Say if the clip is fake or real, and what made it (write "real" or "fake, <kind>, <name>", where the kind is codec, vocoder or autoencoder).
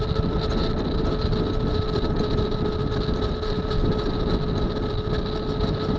real